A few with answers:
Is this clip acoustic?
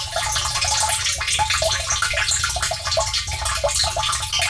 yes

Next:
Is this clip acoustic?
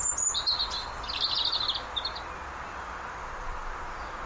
yes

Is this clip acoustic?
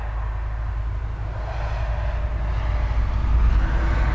yes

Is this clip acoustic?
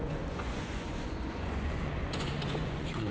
no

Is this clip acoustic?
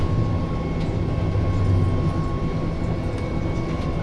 yes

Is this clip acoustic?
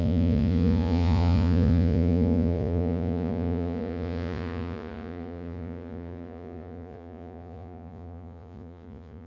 no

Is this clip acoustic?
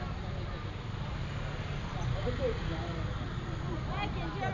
yes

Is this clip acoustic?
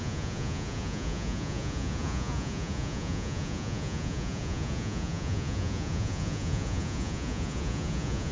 no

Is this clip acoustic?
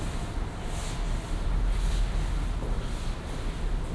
yes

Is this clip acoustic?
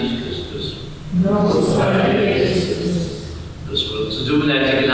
yes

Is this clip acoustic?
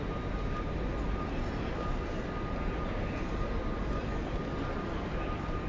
yes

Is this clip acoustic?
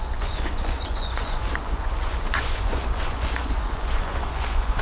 no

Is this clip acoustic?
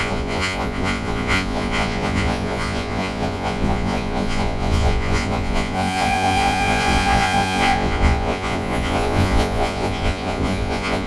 no